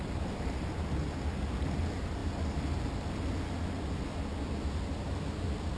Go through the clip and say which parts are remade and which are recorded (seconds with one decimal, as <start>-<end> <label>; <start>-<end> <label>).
0.0-5.8 recorded